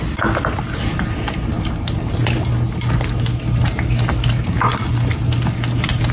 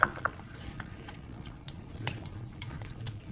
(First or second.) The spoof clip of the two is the second